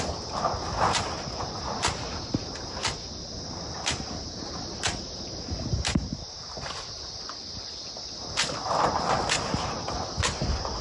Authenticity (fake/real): real